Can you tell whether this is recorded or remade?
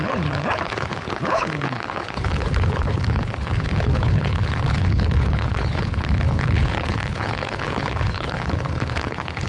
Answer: remade